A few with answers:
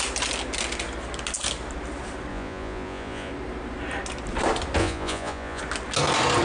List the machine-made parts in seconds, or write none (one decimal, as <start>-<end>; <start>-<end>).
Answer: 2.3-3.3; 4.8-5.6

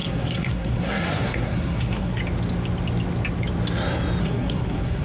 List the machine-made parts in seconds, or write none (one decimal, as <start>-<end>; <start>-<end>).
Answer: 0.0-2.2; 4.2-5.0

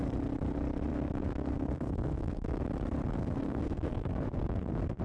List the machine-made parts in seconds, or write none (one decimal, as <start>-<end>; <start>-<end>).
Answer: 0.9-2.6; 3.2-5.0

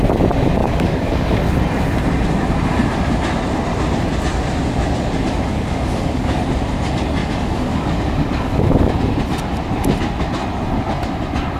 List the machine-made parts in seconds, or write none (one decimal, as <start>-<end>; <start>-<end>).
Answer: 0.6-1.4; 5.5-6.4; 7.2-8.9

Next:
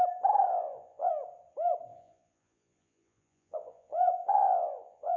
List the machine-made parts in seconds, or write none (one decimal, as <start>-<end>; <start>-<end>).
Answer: 0.5-1.1; 1.9-5.2

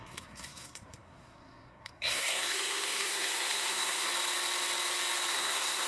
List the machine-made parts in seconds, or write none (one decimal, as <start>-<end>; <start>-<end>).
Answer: 0.0-4.1; 5.3-5.9